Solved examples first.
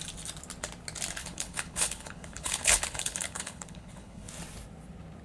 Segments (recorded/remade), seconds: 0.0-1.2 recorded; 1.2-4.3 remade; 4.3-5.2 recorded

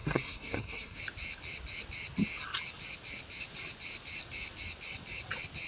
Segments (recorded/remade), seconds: 0.0-1.0 remade; 1.0-5.7 recorded

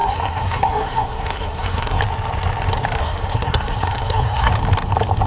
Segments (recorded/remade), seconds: 0.0-2.0 remade; 2.0-3.0 recorded; 3.0-4.5 remade; 4.5-5.3 recorded